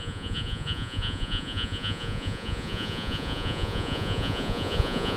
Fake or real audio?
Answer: fake